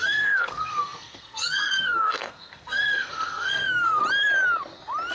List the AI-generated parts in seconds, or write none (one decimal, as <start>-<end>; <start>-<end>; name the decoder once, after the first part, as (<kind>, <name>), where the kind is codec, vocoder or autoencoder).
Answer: 0.0-4.0 (codec, SNAC)